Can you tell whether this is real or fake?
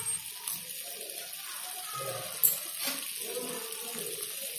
real